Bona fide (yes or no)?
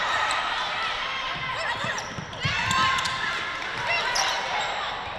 no